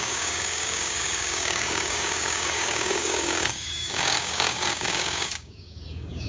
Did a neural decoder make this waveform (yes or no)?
yes